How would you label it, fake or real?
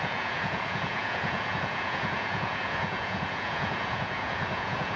fake